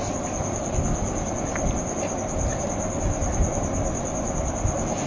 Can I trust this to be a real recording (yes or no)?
yes